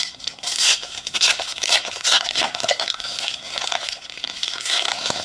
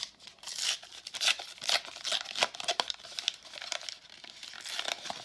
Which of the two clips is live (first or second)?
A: second